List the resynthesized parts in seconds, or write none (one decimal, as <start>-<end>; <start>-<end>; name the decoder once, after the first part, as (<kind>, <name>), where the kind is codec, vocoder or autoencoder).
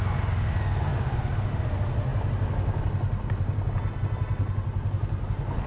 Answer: none